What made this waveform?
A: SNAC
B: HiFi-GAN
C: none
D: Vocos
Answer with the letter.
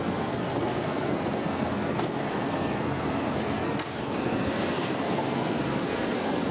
A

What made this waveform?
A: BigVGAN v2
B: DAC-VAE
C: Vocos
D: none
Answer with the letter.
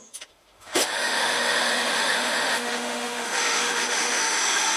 B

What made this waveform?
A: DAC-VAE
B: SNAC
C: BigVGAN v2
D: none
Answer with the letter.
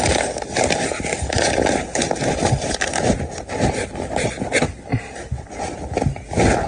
D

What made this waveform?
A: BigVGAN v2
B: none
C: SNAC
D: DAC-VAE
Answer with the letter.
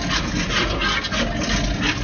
B